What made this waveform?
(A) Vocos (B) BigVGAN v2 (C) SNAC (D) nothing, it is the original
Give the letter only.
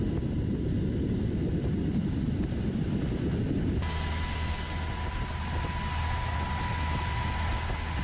D